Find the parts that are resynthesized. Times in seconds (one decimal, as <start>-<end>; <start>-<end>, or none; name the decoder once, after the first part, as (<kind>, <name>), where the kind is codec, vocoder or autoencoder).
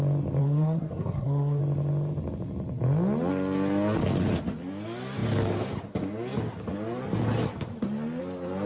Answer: 0.4-1.6 (codec, SNAC)